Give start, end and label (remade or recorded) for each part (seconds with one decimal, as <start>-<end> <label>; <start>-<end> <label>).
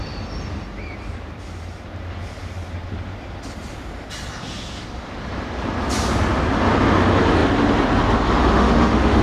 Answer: 0.0-8.4 recorded; 8.4-9.2 remade